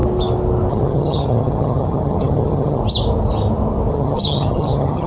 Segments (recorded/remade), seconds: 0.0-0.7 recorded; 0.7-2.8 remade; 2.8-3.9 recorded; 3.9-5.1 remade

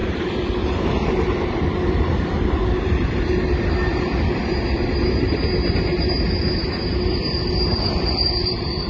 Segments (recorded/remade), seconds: 0.0-8.9 recorded

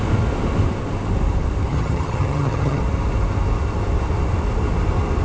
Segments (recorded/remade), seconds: 0.0-1.7 recorded; 1.7-2.8 remade; 2.8-5.2 recorded

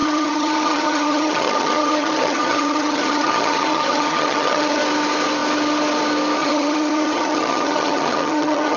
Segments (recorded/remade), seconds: 0.0-4.8 remade; 4.8-6.4 recorded; 6.4-8.8 remade